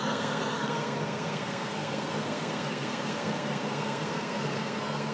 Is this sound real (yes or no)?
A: no